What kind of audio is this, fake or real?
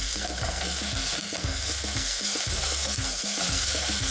fake